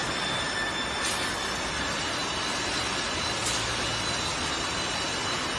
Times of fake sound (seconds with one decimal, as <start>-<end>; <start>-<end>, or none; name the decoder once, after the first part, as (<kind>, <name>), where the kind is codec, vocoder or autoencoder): none